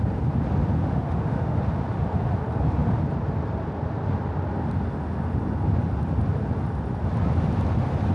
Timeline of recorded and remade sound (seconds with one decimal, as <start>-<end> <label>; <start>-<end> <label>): 0.0-0.8 recorded; 0.8-1.6 remade; 1.6-8.1 recorded